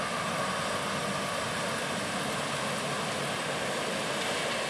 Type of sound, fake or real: real